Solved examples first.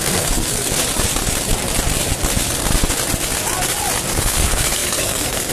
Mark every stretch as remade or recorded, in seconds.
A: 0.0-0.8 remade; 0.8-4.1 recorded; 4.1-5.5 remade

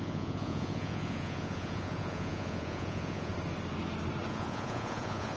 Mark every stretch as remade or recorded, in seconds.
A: 0.0-3.3 remade; 3.3-4.3 recorded; 4.3-5.4 remade

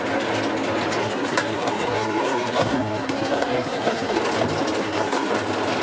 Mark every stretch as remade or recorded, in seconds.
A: 0.0-1.0 recorded; 1.0-4.2 remade; 4.2-4.8 recorded; 4.8-5.3 remade; 5.3-5.8 recorded

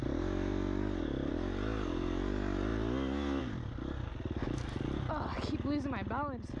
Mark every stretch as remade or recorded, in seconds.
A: 0.0-6.6 recorded

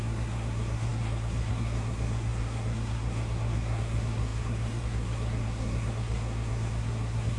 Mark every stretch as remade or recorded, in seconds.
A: 0.0-7.4 remade

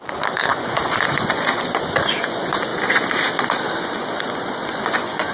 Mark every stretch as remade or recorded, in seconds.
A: 0.0-2.7 remade; 2.7-3.8 recorded; 3.8-5.3 remade

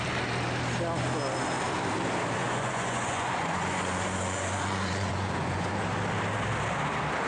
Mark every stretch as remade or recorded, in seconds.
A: 0.0-2.4 recorded; 2.4-5.7 remade; 5.7-7.3 recorded

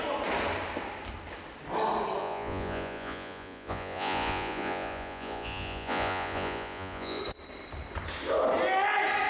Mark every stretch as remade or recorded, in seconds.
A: 0.0-2.2 recorded; 2.2-7.2 remade; 7.2-9.3 recorded